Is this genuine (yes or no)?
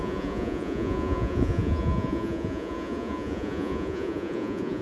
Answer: no